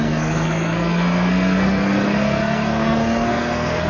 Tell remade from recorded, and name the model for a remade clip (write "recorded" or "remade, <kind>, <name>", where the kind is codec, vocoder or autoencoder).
remade, codec, SNAC